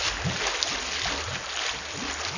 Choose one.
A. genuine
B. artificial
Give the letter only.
A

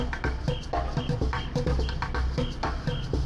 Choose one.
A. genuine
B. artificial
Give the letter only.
A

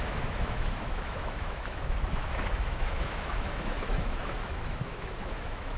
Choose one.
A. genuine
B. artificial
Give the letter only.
B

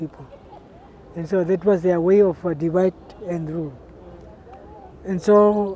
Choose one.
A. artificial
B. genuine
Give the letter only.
B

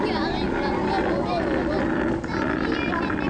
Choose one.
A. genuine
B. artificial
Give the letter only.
A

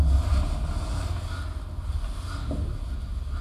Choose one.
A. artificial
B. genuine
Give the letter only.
B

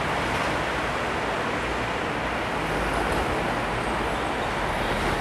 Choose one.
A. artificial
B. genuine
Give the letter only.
B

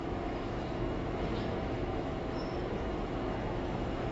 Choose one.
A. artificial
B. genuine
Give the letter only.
A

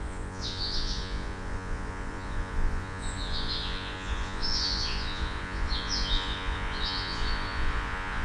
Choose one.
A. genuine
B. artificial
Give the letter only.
B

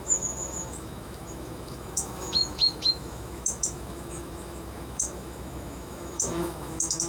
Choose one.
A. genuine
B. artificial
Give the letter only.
B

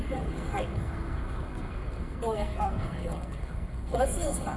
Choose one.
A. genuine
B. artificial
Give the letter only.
B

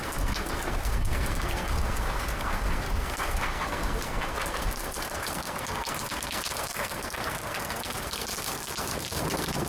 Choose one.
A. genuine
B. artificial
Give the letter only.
B